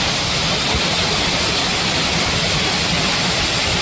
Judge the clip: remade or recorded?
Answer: recorded